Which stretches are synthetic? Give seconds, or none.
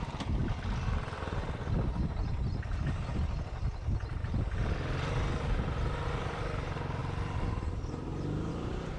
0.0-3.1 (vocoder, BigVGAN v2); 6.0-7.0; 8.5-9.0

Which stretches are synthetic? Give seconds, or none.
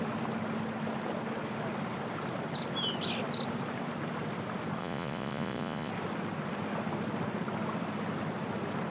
4.8-5.9 (vocoder, Vocos)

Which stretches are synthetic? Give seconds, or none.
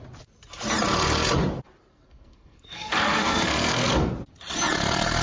1.9-4.1 (codec, SNAC)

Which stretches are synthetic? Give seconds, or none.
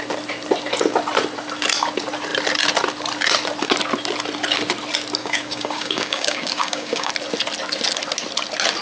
5.2-7.1 (codec, DAC)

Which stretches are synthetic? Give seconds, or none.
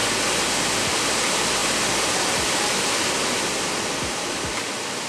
none